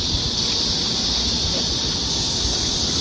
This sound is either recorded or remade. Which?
recorded